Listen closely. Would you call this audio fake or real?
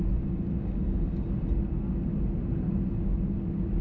real